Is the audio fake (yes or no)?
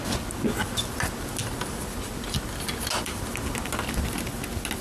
no